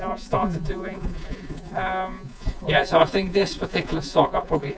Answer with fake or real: fake